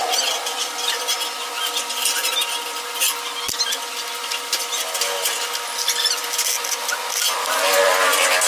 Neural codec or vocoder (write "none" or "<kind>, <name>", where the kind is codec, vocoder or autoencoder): none